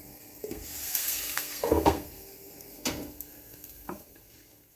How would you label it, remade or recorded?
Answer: remade